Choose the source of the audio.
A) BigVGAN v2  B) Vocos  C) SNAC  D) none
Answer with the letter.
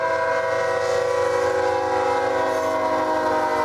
D